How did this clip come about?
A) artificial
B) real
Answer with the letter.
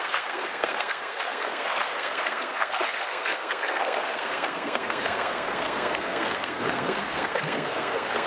A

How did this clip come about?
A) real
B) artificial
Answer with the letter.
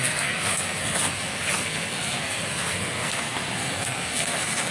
B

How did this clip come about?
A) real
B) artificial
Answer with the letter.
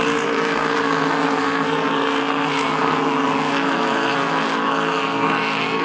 B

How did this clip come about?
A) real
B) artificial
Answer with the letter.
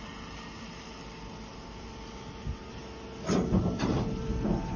A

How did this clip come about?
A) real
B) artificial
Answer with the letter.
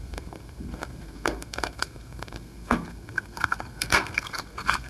B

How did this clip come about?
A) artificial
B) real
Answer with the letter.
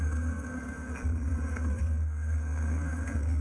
A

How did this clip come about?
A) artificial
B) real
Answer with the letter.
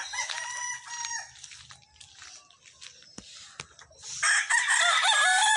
B